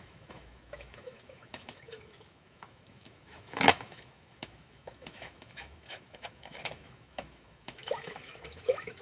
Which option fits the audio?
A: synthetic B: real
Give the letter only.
A